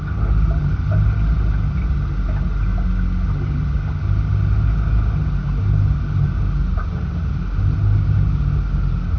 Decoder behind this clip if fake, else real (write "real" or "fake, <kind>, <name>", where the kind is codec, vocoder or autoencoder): real